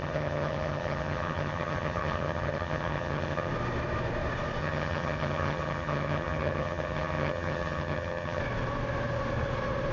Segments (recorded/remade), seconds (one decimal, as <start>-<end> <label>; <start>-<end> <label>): 0.0-3.5 remade; 3.5-4.6 recorded; 4.6-8.4 remade; 8.4-9.9 recorded